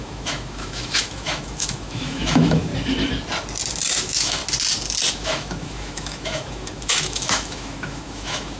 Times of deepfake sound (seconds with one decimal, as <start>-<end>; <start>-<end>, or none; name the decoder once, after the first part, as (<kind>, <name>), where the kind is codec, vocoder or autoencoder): 0.0-2.7 (autoencoder, DAC-VAE); 3.9-4.4; 5.1-8.6